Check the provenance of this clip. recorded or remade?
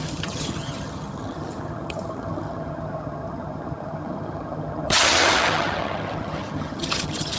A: remade